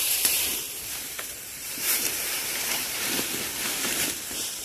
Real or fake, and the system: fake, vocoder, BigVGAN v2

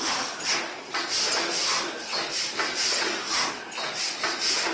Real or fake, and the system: real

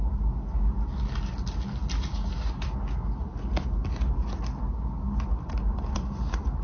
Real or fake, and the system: real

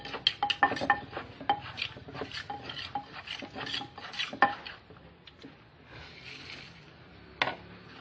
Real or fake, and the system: real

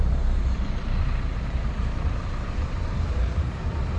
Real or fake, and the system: fake, vocoder, BigVGAN v2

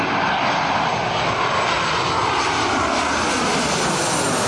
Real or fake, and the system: real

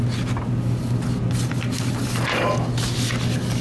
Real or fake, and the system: real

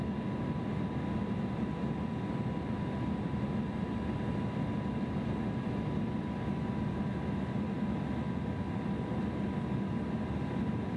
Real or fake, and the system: real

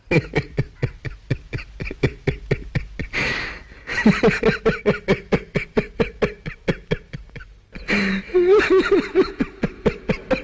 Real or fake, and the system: real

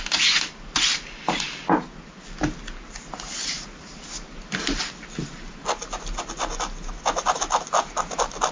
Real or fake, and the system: real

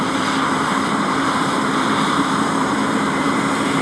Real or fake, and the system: fake, vocoder, BigVGAN v2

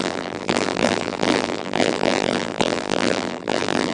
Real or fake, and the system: fake, vocoder, BigVGAN v2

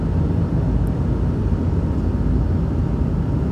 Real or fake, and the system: real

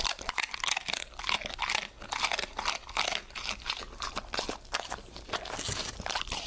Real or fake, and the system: real